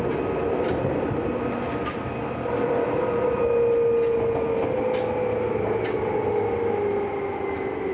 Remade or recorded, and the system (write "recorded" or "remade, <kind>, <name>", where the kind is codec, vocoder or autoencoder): recorded